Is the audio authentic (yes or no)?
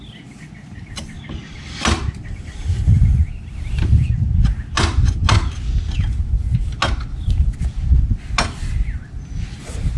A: yes